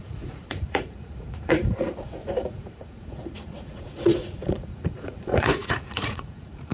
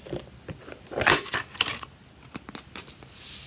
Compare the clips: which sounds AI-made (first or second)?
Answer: first